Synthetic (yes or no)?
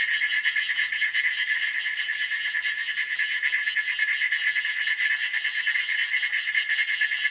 no